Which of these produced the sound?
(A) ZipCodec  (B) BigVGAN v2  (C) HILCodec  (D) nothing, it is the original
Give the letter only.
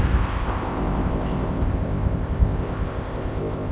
A